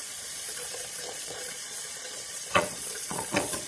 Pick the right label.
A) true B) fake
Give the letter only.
B